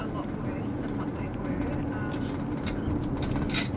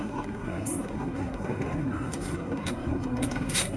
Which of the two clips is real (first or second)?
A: first